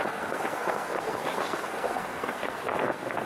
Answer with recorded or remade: remade